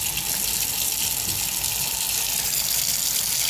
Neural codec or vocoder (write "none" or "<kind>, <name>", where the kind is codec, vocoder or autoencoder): none